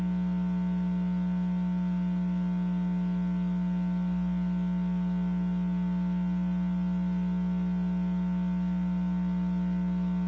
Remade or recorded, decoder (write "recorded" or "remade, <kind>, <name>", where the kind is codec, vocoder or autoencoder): recorded